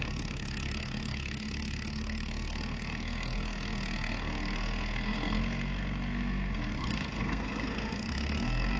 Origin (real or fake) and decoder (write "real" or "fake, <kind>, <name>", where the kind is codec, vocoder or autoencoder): fake, codec, SNAC